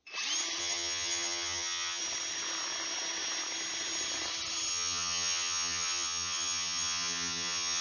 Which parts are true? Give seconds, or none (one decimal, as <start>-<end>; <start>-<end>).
0.0-0.6; 2.0-4.7